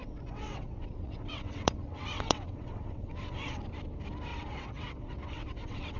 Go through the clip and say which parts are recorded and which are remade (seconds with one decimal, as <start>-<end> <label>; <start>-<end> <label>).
0.0-3.6 remade; 3.6-4.3 recorded; 4.3-6.0 remade